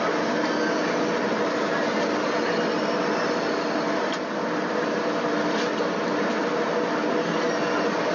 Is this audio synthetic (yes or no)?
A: no